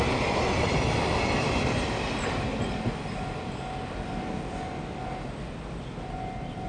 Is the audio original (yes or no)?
yes